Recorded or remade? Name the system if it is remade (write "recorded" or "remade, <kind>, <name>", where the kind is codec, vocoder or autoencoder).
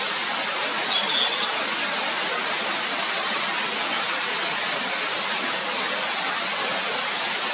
recorded